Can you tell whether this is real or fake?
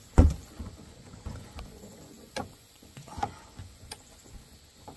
fake